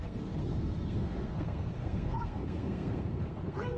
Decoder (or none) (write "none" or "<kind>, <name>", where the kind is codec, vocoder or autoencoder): codec, SNAC